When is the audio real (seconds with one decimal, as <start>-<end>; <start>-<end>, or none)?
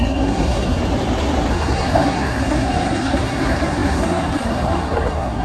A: 0.8-1.5